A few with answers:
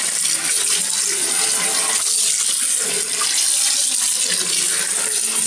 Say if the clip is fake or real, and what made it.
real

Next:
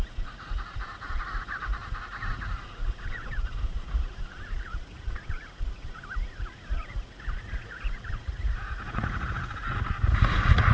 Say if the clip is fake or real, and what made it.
fake, vocoder, Vocos